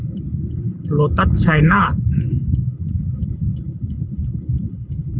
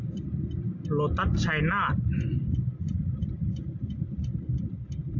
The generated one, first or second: first